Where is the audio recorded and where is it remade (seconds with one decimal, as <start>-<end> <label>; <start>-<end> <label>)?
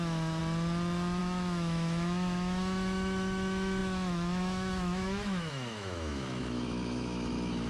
0.0-0.4 remade; 0.4-1.2 recorded; 1.2-7.7 remade